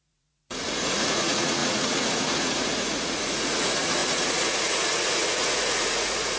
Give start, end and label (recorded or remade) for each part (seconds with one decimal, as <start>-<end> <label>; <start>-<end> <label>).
0.0-6.4 remade